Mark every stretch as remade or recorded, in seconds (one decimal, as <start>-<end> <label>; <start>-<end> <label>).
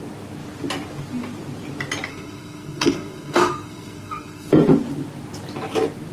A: 0.0-2.1 recorded; 2.1-4.5 remade; 4.5-6.1 recorded